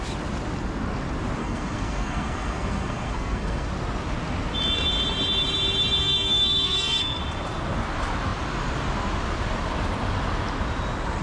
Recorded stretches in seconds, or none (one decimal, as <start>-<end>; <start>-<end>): 0.0-1.4; 3.7-6.0; 7.2-11.2